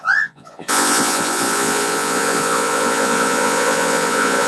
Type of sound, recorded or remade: remade